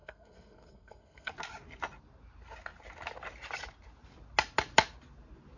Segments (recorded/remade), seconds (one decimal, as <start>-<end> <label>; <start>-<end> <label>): 0.0-1.3 remade; 1.3-5.6 recorded

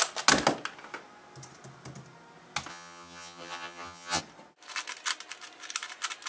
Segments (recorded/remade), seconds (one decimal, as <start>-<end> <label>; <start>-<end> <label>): 0.0-2.7 recorded; 2.7-4.2 remade; 4.2-6.3 recorded

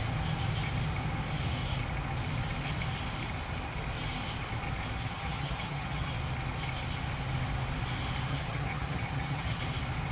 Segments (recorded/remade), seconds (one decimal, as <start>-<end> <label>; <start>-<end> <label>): 0.0-5.0 recorded; 5.0-6.1 remade; 6.1-8.3 recorded; 8.3-9.6 remade; 9.6-10.1 recorded

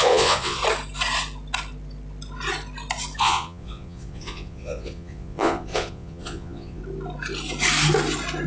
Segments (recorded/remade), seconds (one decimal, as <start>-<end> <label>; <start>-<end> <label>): 0.0-0.6 remade; 0.6-3.2 recorded; 3.2-6.8 remade; 6.8-8.5 recorded

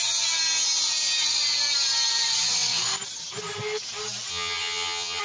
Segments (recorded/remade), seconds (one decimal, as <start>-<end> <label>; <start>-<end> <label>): 0.0-4.3 recorded; 4.3-5.2 remade

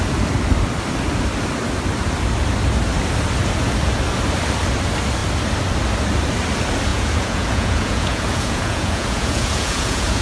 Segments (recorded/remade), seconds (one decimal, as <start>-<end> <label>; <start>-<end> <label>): 0.0-6.9 recorded; 6.9-10.2 remade

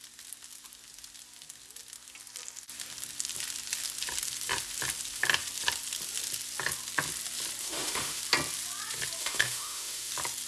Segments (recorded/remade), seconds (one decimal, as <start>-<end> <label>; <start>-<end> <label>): 0.0-7.6 recorded; 7.6-8.2 remade; 8.2-9.2 recorded; 9.2-10.1 remade; 10.1-10.5 recorded